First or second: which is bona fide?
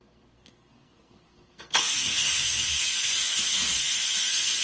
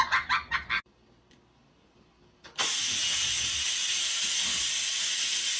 second